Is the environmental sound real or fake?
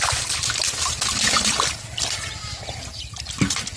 real